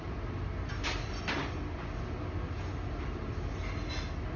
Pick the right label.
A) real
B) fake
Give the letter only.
A